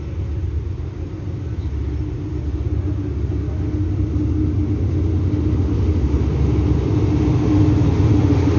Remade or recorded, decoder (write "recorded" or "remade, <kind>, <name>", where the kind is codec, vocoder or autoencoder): recorded